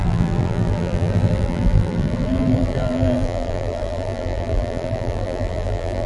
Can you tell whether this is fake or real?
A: fake